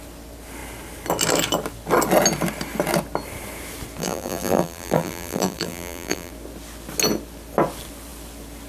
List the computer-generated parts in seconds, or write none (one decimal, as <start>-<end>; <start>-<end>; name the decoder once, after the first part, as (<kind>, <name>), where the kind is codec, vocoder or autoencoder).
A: 4.0-6.3 (vocoder, BigVGAN v2)